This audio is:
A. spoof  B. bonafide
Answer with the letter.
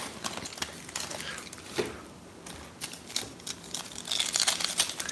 B